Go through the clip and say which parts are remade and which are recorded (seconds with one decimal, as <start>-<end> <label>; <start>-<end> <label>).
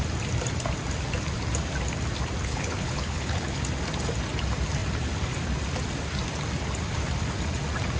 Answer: 0.0-2.4 recorded; 2.4-3.6 remade; 3.6-8.0 recorded